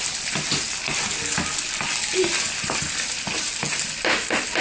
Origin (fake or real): real